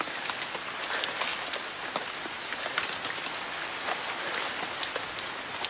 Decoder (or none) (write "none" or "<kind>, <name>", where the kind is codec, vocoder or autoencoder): none